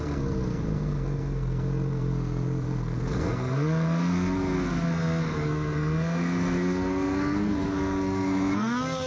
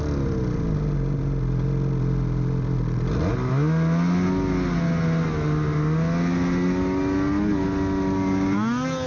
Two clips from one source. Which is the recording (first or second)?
second